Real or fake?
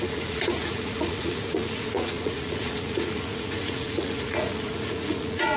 fake